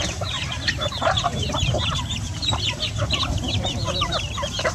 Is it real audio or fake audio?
fake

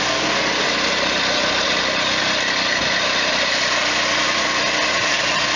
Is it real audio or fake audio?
real